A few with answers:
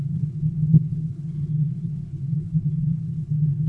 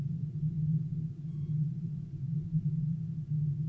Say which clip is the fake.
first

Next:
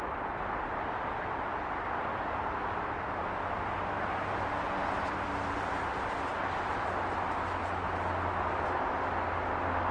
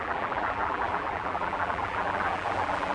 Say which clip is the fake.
second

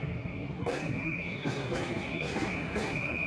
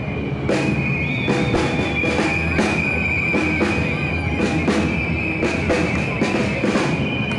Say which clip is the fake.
first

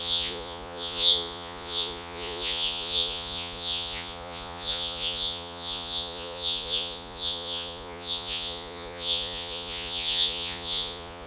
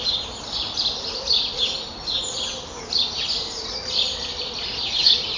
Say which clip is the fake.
first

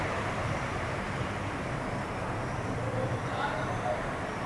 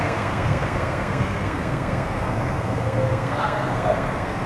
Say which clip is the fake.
second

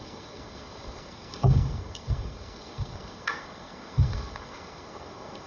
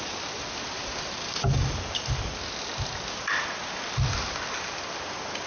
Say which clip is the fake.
first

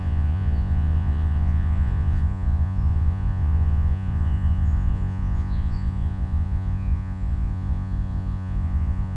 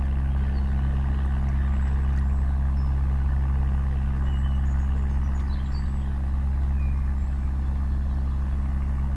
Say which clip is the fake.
first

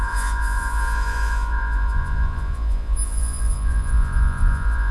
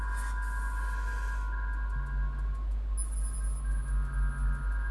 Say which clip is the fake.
first